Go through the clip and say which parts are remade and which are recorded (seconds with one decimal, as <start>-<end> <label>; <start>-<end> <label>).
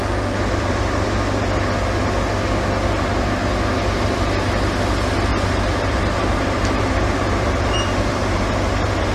0.0-5.3 recorded; 5.3-8.5 remade; 8.5-9.1 recorded